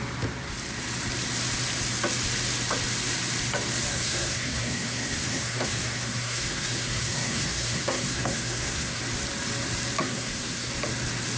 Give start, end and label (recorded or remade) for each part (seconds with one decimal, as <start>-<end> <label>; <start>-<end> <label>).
0.0-3.9 recorded; 3.9-9.0 remade; 9.0-10.0 recorded; 10.0-10.7 remade; 10.7-11.4 recorded